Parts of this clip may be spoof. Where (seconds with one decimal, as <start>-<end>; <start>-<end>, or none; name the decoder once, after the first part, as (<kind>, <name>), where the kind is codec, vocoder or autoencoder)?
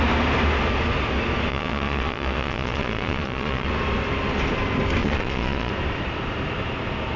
1.5-3.7 (vocoder, Vocos); 5.0-5.7